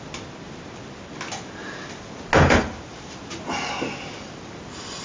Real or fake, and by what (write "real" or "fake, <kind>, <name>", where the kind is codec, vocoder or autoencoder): real